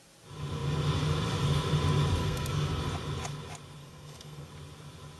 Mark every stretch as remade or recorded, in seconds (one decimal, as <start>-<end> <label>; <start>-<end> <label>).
0.0-2.2 recorded; 2.2-2.8 remade; 2.8-3.8 recorded; 3.8-4.5 remade; 4.5-5.2 recorded